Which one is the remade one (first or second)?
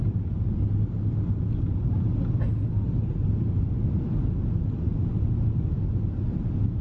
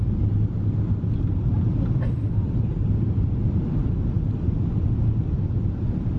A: second